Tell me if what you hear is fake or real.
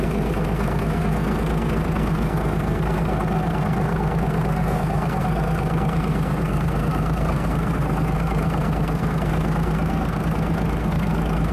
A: fake